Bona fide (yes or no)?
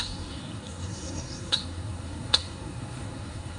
no